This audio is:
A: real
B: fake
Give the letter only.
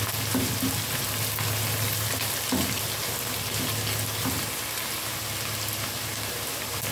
A